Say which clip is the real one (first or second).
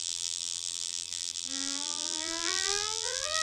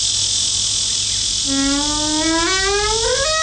second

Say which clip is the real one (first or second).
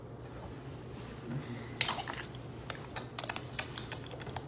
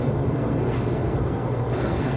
first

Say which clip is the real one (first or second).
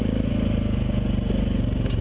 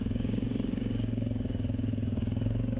first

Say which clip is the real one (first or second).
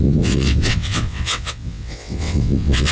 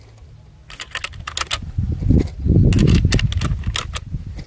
second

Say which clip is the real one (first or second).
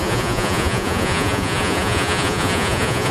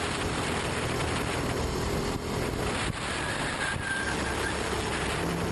second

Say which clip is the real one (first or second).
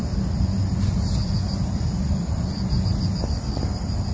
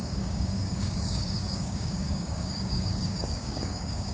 first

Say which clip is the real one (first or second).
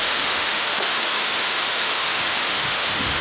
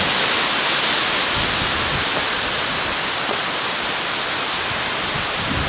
second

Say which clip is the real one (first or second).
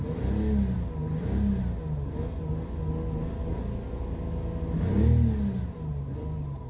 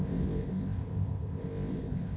first